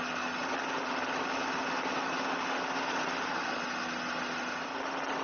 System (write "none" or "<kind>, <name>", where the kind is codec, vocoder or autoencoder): none